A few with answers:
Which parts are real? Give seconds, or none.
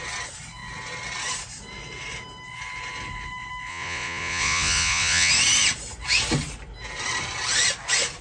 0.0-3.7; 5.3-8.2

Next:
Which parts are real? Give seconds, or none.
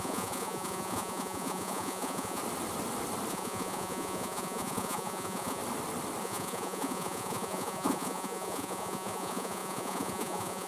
2.4-3.3; 5.6-6.2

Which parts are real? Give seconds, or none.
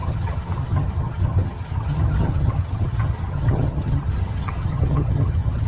none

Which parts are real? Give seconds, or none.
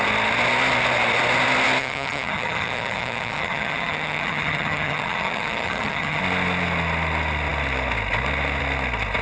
0.0-1.8; 6.2-9.2